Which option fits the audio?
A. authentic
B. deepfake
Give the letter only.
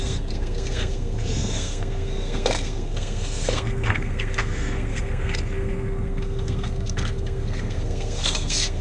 B